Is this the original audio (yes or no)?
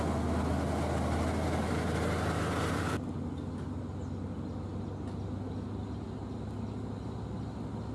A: yes